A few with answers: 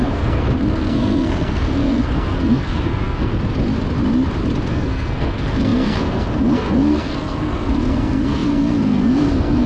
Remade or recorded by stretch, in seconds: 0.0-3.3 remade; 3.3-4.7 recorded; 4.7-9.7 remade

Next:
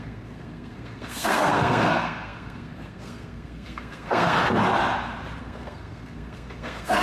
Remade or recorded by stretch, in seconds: 0.0-4.4 remade; 4.4-5.4 recorded; 5.4-7.0 remade

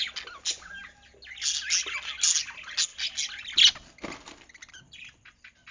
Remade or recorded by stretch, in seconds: 0.0-5.7 recorded